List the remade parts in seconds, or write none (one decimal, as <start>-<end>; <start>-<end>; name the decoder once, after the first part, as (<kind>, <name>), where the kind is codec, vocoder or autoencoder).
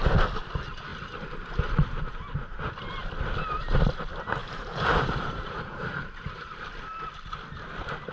4.4-6.7 (vocoder, BigVGAN v2)